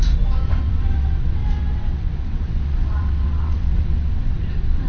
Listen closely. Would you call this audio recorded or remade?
remade